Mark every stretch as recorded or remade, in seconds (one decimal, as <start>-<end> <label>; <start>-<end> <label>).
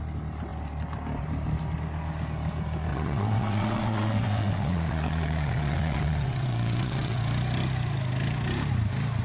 0.0-2.9 recorded; 2.9-7.2 remade; 7.2-9.2 recorded